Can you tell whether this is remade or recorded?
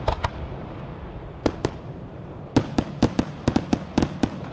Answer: recorded